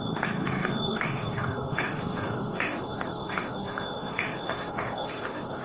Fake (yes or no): yes